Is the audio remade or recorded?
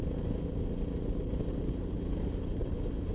recorded